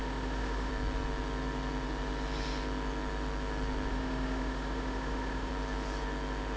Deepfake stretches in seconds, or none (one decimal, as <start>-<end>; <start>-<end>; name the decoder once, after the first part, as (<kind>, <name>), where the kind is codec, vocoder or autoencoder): 0.0-0.7 (autoencoder, DAC-VAE); 3.9-5.5